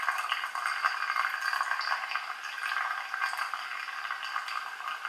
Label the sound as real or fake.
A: real